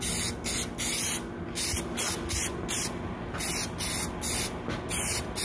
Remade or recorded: recorded